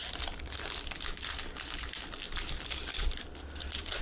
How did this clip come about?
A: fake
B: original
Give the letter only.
B